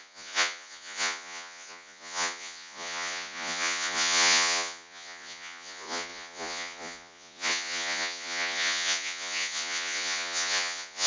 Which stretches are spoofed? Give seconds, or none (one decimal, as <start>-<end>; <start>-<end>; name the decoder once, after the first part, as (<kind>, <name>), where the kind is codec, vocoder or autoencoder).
0.0-11.1 (vocoder, Vocos)